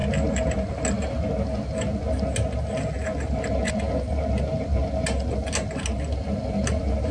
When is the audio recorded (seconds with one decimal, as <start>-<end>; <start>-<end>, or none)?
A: 0.0-7.1